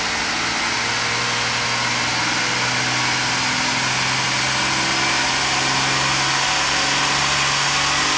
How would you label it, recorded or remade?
recorded